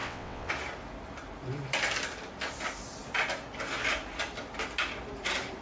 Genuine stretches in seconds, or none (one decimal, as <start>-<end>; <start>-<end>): 0.5-5.6